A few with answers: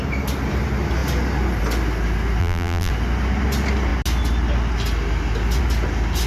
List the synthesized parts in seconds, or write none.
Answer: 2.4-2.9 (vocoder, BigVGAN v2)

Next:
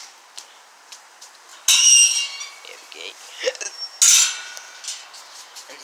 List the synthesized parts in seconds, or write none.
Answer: none

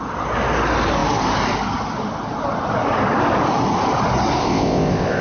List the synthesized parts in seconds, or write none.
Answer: 4.4-5.2 (codec, ZipCodec)

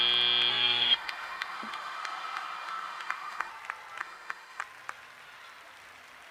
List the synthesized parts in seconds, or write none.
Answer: 0.5-3.5 (autoencoder, DAC-VAE); 4.0-4.6

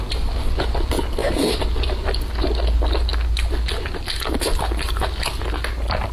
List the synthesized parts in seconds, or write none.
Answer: none

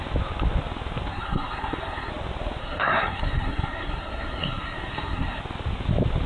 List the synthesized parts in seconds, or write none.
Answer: 1.1-2.1 (codec, SNAC); 2.6-5.4

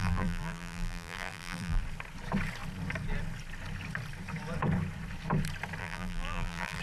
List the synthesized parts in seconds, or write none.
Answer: 0.0-1.8 (vocoder, BigVGAN v2); 5.8-6.8

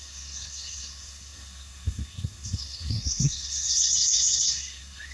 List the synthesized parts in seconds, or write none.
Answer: 0.0-5.1 (codec, SNAC)